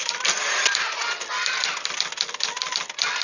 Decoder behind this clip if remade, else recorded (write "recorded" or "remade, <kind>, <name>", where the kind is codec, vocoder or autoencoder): recorded